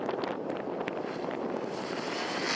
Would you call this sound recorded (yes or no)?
yes